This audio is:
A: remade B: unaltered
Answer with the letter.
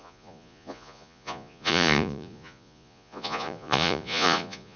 A